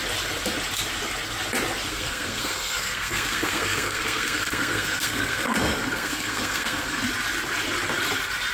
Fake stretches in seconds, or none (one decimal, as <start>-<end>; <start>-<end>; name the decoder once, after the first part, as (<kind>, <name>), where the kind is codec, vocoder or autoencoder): 1.9-7.0 (codec, SNAC)